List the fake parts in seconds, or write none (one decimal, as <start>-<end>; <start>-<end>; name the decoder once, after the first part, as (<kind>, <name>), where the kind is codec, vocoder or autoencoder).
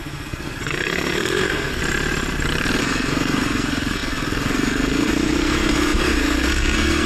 0.0-1.8 (codec, SNAC); 2.8-7.1